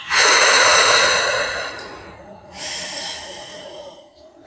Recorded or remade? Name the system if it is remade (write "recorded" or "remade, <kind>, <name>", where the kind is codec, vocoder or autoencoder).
remade, vocoder, Vocos